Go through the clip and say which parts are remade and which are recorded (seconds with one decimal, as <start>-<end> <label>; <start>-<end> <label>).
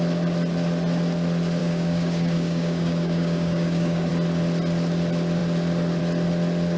0.0-1.6 recorded; 1.6-4.1 remade; 4.1-6.8 recorded